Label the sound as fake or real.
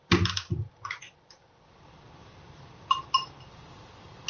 real